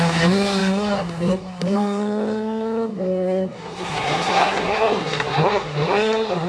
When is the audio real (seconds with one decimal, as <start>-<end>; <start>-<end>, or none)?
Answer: none